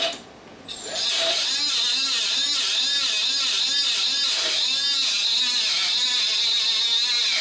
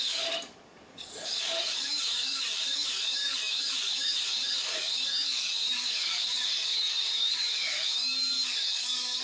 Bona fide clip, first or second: first